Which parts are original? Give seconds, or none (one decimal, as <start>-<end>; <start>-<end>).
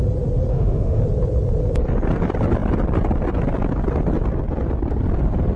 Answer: 0.0-0.5; 1.0-5.6